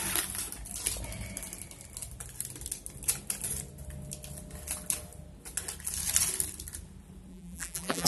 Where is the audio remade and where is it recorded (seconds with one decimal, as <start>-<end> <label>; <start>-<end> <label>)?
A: 0.0-7.3 recorded; 7.3-8.1 remade